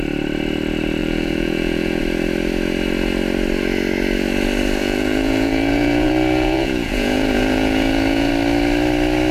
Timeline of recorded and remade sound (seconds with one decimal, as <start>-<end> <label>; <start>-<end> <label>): 0.0-1.0 recorded; 1.0-2.0 remade; 2.0-4.8 recorded; 4.8-8.3 remade; 8.3-9.3 recorded